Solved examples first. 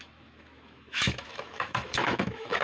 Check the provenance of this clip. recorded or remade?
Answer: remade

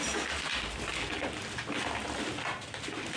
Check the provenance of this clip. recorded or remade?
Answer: recorded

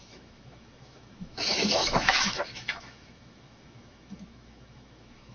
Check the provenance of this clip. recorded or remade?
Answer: remade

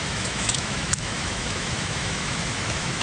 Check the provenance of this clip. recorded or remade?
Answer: remade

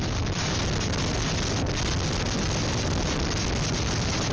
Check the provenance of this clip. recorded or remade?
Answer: recorded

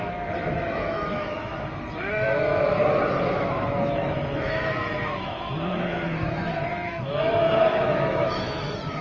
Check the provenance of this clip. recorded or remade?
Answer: remade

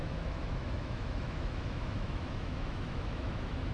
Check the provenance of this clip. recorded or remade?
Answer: remade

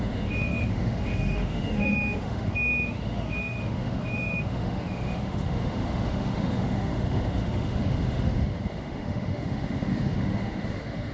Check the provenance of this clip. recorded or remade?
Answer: remade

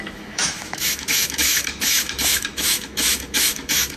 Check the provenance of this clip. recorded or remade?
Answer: remade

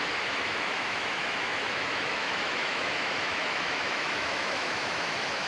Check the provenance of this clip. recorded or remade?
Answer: remade